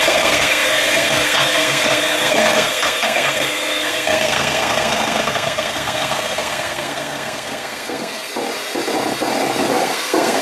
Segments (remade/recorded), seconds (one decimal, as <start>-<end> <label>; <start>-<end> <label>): 0.0-8.3 remade; 8.3-9.7 recorded; 9.7-10.4 remade